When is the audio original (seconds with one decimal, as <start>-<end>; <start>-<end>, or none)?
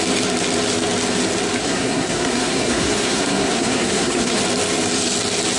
0.0-1.6; 4.4-5.6